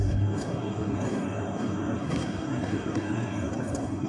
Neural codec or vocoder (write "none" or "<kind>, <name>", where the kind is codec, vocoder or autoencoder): codec, SNAC